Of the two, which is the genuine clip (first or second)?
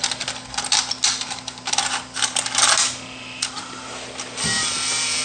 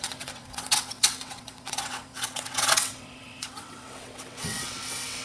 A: first